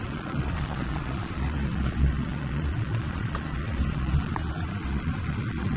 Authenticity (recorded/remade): remade